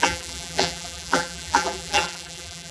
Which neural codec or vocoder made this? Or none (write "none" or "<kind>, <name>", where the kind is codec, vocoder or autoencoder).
vocoder, BigVGAN v2